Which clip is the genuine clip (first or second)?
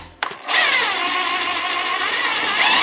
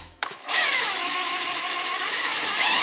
first